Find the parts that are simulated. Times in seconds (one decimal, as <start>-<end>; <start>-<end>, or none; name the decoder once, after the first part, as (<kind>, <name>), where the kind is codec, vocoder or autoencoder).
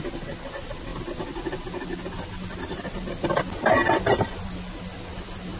none